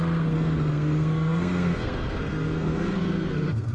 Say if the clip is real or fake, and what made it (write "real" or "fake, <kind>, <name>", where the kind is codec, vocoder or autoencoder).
fake, codec, SNAC